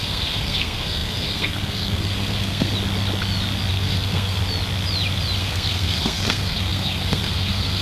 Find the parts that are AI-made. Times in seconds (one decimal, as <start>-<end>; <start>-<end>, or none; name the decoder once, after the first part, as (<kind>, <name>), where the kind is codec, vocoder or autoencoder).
0.0-2.7 (codec, SNAC); 3.7-4.4; 5.4-7.8